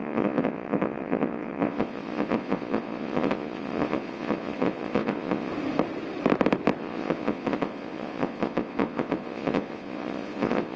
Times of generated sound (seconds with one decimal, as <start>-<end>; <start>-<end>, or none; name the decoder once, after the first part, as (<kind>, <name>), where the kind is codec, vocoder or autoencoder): 0.0-5.5 (vocoder, Vocos); 6.8-10.8